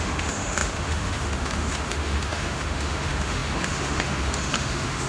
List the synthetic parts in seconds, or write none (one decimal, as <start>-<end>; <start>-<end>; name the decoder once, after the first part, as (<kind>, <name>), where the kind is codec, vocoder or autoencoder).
0.0-5.1 (autoencoder, DAC-VAE)